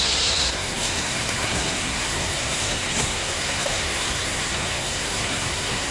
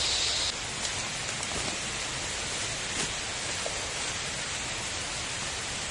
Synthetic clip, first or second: first